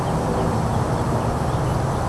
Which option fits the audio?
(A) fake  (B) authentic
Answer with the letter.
B